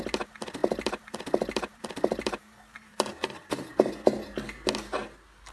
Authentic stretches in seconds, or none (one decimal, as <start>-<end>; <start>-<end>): 0.0-0.6; 3.9-5.5